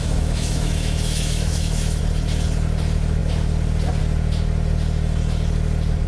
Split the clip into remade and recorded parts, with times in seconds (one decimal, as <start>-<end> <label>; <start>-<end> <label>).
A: 0.0-2.0 remade; 2.0-6.1 recorded